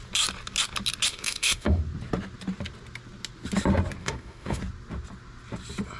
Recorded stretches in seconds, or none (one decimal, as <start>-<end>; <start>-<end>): 0.0-1.1; 1.8-4.0; 4.6-6.0